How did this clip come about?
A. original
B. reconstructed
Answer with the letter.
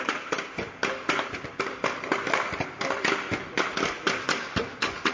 A